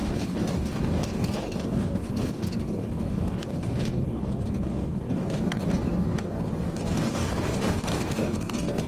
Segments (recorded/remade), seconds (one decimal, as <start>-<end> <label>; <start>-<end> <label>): 0.0-8.9 remade